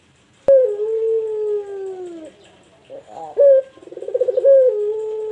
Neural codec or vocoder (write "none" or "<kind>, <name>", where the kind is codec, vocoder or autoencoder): none